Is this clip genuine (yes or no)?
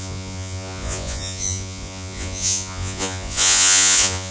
no